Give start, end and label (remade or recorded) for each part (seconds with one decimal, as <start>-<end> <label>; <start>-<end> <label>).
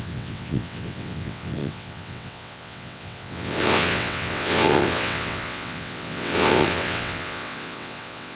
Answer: 0.0-8.4 remade